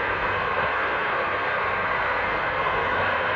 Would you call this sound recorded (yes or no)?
no